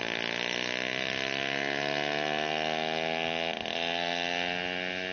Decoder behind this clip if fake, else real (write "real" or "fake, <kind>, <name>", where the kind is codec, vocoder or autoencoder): real